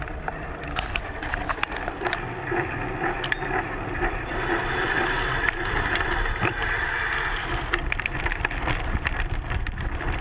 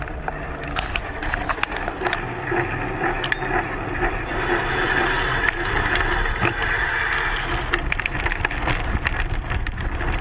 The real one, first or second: second